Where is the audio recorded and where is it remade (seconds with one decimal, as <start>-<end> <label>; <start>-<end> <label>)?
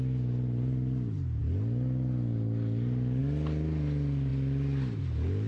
0.0-5.5 recorded